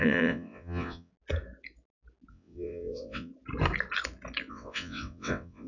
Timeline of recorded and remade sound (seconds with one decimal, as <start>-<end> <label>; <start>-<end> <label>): 0.0-1.1 remade; 1.1-2.3 recorded; 2.3-3.3 remade; 3.3-4.5 recorded; 4.5-5.7 remade